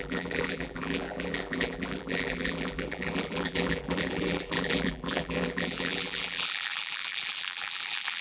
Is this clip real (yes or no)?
no